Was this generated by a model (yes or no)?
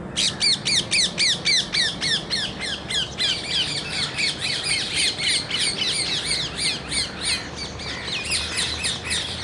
no